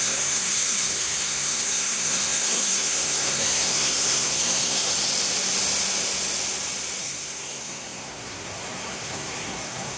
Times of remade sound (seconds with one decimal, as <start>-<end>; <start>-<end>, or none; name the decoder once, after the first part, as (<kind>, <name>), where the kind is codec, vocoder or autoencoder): 0.0-4.9 (codec, SNAC); 7.0-10.0